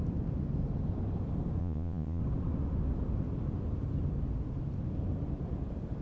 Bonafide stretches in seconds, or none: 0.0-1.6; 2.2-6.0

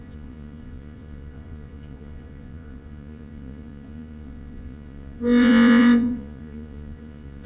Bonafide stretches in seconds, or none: none

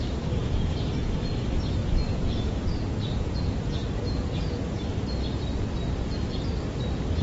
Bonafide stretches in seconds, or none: 0.0-0.4; 1.2-1.8; 4.8-7.2